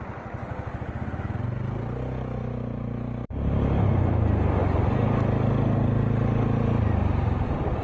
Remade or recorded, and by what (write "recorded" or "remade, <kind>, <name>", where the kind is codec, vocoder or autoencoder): recorded